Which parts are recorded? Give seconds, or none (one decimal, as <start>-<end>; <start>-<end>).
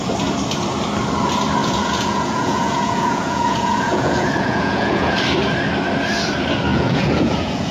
0.0-1.6; 5.2-6.7